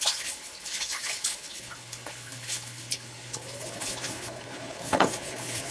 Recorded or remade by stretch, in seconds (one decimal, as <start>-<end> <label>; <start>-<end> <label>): 0.0-5.7 remade